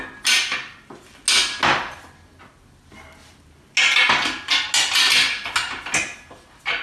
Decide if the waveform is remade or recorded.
recorded